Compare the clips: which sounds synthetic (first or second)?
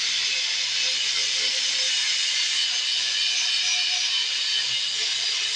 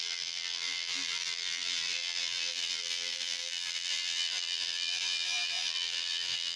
second